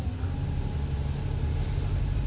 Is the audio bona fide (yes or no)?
yes